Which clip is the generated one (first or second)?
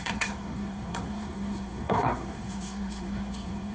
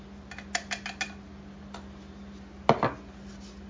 first